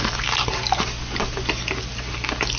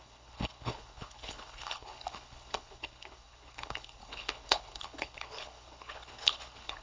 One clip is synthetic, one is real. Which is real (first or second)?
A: first